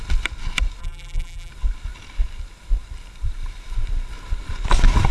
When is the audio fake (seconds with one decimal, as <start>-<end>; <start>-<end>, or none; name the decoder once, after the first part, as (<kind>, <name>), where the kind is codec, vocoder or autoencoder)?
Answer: 0.8-1.5 (vocoder, BigVGAN v2)